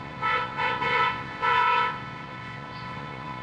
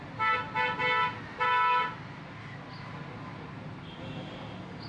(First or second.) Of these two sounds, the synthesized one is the first